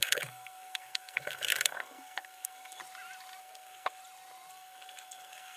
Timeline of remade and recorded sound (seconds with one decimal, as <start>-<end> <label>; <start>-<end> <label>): 0.0-2.8 remade; 2.8-3.4 recorded; 3.4-4.0 remade; 4.0-4.5 recorded; 4.5-5.6 remade